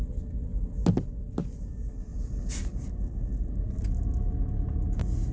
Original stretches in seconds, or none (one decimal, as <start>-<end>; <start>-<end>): 0.0-5.3